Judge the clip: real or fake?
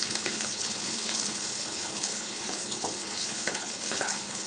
fake